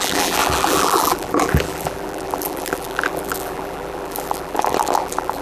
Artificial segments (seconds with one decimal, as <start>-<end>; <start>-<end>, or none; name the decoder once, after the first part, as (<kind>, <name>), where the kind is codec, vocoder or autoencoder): 0.0-5.4 (vocoder, BigVGAN v2)